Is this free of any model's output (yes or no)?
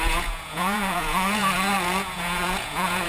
no